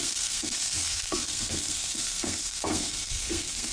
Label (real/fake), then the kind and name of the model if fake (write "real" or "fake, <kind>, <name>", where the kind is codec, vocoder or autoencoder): fake, codec, SNAC